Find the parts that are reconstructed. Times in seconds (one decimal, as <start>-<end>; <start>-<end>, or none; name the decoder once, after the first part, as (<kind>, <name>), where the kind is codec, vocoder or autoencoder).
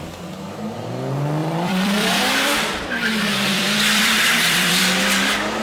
1.4-4.8 (vocoder, BigVGAN v2)